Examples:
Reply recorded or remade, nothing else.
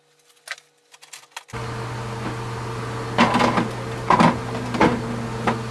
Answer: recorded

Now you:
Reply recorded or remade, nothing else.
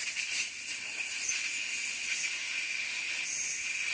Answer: recorded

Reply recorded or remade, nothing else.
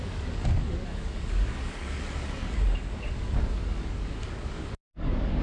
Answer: remade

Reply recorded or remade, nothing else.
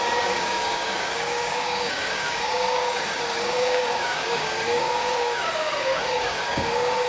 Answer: remade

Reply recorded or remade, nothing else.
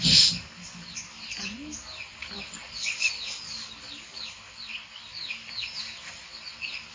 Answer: recorded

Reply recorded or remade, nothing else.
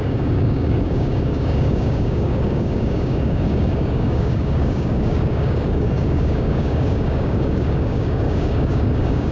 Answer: remade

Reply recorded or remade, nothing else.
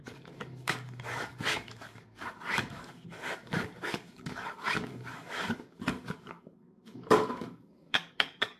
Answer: remade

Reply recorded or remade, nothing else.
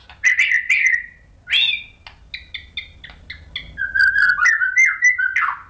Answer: recorded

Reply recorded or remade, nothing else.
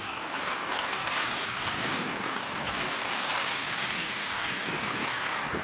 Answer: remade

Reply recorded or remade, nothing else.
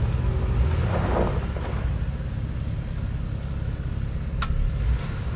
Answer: recorded